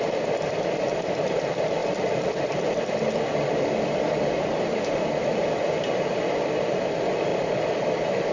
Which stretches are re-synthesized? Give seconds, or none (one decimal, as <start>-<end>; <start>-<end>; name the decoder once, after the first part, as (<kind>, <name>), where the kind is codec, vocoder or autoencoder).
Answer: 1.8-6.2 (vocoder, BigVGAN v2); 7.3-8.3